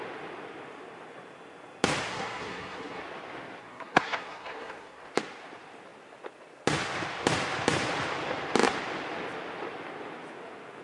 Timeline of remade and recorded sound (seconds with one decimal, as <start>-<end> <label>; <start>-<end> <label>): 0.0-2.1 recorded; 2.1-3.0 remade; 3.0-3.6 recorded; 3.6-5.0 remade; 5.0-10.8 recorded

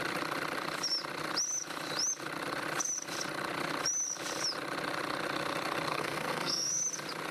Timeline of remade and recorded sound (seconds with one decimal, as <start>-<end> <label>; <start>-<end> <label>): 0.0-5.9 recorded; 5.9-6.8 remade; 6.8-7.3 recorded

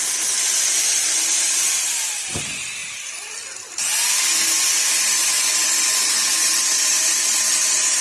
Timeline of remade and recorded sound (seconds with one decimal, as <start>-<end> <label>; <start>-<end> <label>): 0.0-8.0 recorded